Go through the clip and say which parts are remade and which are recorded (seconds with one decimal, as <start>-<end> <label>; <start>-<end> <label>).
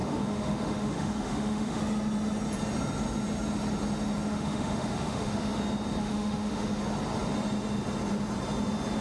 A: 0.0-1.8 remade; 1.8-4.3 recorded; 4.3-5.6 remade; 5.6-6.0 recorded; 6.0-6.8 remade; 6.8-9.0 recorded